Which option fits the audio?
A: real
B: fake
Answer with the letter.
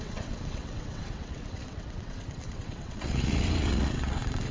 B